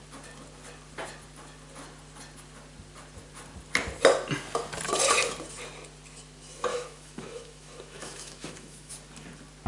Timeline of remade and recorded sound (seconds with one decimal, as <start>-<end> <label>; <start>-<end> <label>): 0.0-6.7 recorded; 6.7-8.9 remade; 8.9-9.7 recorded